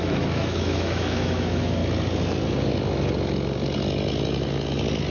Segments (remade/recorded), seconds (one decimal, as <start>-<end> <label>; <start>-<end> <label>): 0.0-1.8 remade; 1.8-5.1 recorded